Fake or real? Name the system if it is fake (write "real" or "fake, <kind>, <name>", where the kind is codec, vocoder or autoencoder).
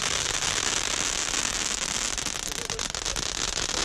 real